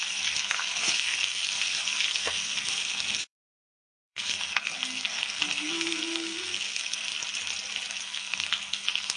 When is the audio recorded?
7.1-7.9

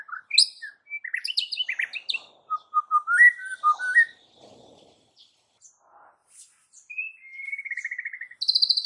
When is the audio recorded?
0.0-6.2; 7.0-8.9

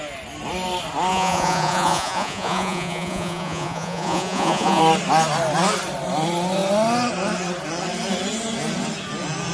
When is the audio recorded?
0.0-1.1; 4.8-9.5

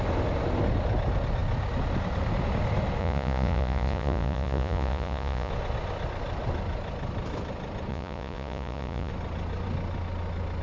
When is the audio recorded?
0.0-3.0; 5.5-7.9; 9.1-10.6

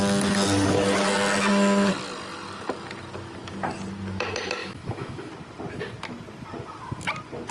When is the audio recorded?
0.0-4.6; 5.3-7.5

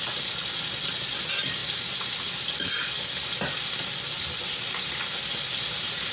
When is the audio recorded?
0.0-6.1

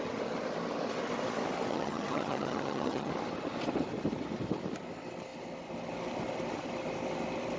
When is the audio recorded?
0.0-1.7; 3.1-7.6